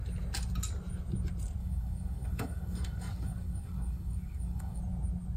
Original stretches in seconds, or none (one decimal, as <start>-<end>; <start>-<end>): 0.0-1.6; 4.8-5.4